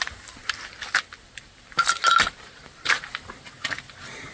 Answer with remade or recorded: recorded